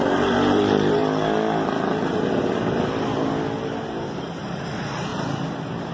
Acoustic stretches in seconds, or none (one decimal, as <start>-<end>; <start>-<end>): 1.0-4.5; 5.1-5.9